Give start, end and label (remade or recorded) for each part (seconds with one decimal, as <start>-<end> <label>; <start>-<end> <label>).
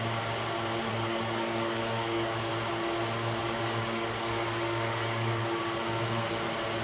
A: 0.0-0.9 recorded; 0.9-2.5 remade; 2.5-3.4 recorded; 3.4-5.6 remade; 5.6-6.8 recorded